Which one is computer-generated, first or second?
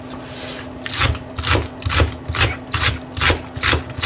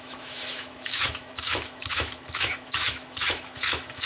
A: second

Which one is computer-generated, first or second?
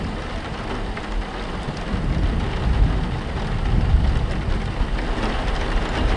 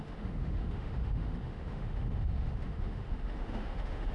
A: second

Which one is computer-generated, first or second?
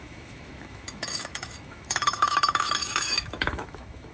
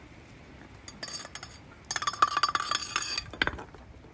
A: first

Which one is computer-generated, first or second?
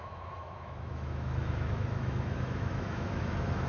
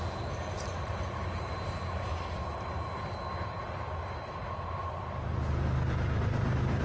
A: first